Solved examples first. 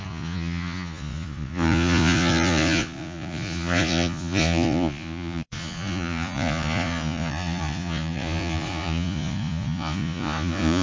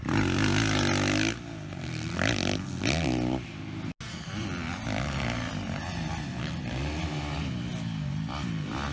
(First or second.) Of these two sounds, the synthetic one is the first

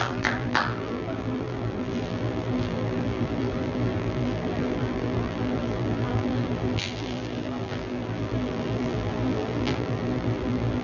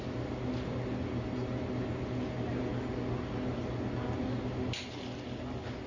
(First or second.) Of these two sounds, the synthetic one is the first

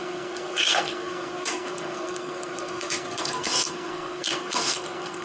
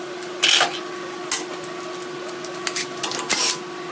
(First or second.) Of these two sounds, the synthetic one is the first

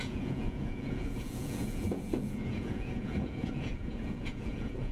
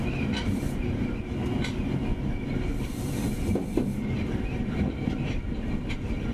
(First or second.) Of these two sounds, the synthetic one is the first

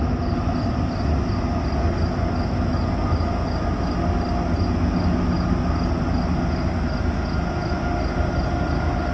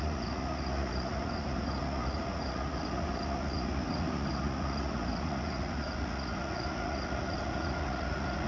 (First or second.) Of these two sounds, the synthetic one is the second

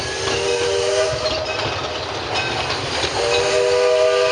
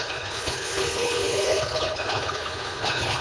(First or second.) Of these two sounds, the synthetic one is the second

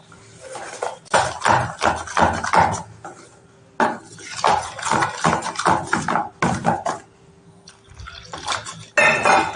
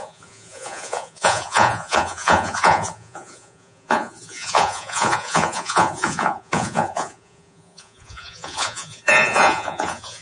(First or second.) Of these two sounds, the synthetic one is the second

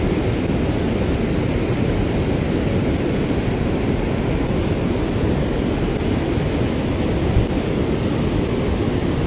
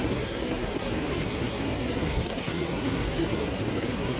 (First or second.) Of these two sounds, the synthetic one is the second